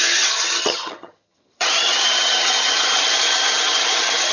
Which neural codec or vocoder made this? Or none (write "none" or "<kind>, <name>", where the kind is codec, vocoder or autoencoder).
vocoder, HiFi-GAN